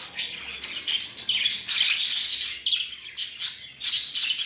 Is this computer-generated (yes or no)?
no